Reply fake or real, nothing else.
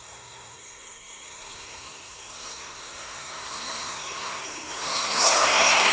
fake